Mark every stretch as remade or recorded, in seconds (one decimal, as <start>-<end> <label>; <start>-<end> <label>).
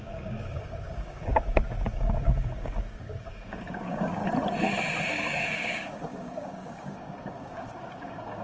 0.0-1.3 remade; 1.3-1.9 recorded; 1.9-4.2 remade; 4.2-5.1 recorded; 5.1-8.4 remade